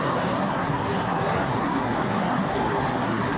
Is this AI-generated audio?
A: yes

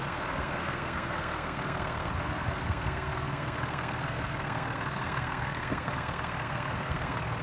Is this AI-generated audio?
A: yes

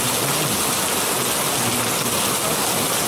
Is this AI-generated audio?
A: no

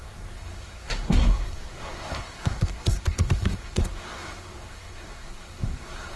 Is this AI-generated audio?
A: yes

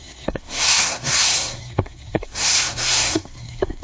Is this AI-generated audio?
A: yes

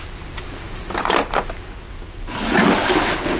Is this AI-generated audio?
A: no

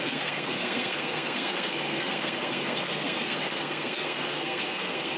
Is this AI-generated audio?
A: yes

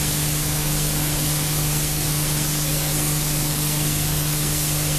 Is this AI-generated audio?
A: yes